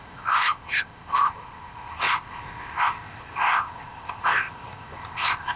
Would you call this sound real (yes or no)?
no